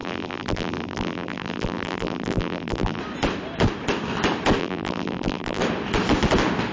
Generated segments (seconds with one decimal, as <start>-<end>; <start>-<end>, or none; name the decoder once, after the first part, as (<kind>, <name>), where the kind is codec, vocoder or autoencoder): 0.0-3.0 (vocoder, BigVGAN v2); 4.6-5.6